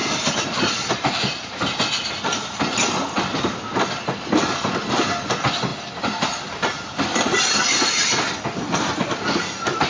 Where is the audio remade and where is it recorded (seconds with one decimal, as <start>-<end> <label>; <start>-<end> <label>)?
0.0-9.9 recorded